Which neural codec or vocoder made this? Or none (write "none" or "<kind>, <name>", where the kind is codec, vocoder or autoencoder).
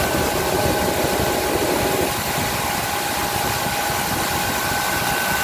none